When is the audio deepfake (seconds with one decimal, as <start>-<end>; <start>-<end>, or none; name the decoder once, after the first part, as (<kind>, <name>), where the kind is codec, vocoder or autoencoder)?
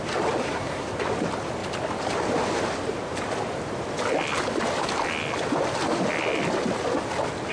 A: 0.4-0.9 (codec, SNAC)